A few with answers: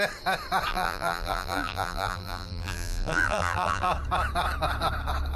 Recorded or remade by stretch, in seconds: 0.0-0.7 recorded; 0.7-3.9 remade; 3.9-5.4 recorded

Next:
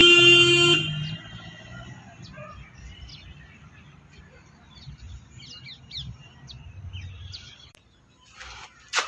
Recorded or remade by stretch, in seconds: 0.0-9.1 recorded